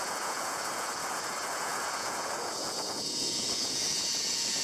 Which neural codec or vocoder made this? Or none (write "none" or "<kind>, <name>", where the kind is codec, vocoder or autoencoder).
vocoder, Vocos